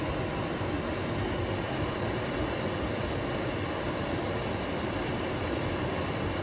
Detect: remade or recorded recorded